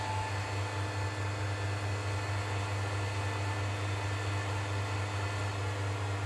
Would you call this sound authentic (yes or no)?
yes